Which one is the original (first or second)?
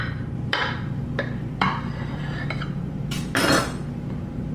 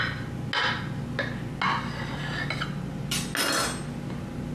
second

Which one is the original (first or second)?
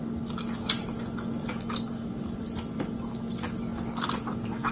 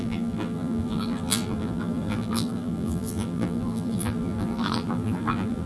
first